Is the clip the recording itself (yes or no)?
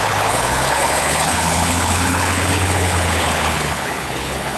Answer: no